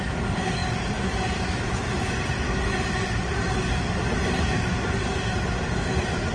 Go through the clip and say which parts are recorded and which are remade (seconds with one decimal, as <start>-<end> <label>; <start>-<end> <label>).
0.0-6.3 recorded